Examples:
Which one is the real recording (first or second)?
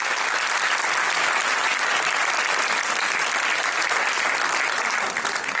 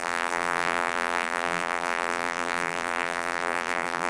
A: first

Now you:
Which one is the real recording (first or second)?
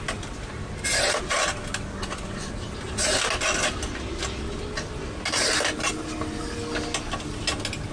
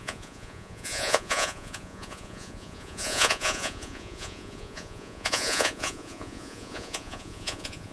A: first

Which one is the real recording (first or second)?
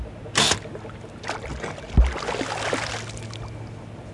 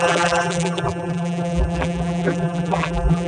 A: first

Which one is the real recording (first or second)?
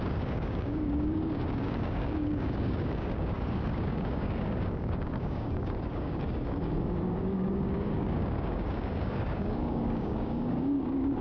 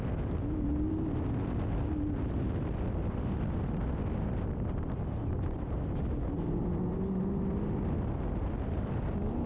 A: second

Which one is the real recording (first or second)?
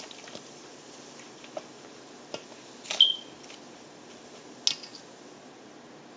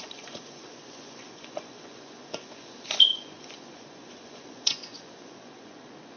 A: first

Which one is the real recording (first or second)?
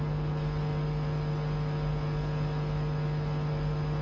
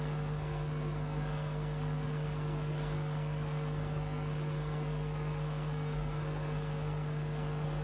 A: first